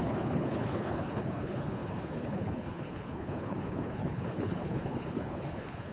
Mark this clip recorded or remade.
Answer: remade